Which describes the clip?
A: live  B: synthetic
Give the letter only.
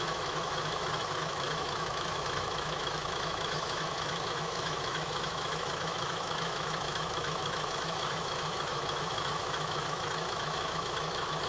B